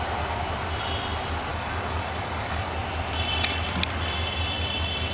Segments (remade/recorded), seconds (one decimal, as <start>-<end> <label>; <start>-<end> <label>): 0.0-1.5 recorded; 1.5-2.7 remade; 2.7-5.1 recorded